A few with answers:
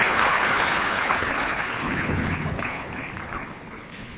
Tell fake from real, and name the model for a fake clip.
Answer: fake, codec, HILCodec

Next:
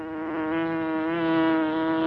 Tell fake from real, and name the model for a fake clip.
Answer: real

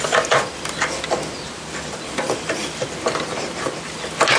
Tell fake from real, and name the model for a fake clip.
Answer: real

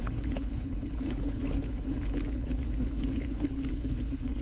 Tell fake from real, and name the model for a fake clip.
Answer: fake, codec, HILCodec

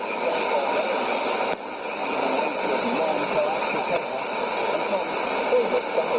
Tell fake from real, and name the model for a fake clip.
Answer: real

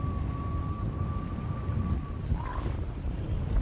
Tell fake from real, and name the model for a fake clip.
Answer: real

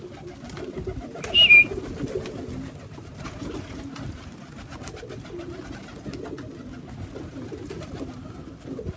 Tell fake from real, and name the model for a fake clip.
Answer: real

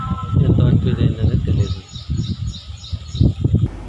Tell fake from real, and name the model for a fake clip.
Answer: real